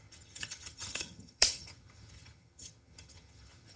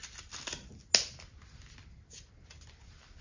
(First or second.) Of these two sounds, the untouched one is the second